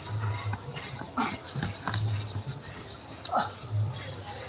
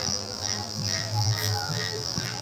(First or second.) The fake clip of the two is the second